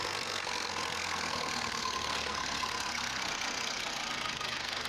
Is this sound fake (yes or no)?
yes